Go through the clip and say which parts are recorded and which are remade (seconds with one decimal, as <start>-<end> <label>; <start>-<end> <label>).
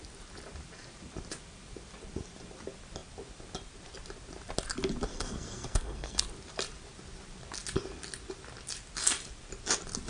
0.0-5.1 recorded; 5.1-6.2 remade; 6.2-10.1 recorded